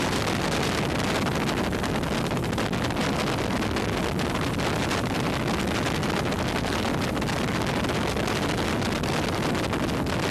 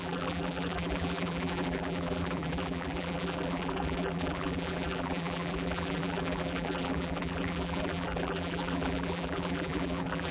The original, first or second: first